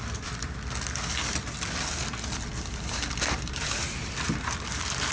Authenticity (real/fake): fake